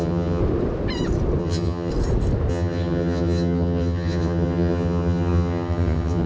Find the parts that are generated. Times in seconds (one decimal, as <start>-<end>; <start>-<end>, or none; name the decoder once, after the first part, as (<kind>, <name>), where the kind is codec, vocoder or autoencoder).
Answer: 0.0-0.4 (vocoder, HiFi-GAN); 1.4-1.9; 2.5-6.3